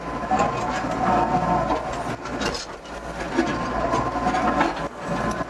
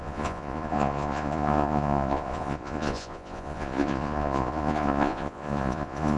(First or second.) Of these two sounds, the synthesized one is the second